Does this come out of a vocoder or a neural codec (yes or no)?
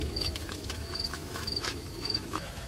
yes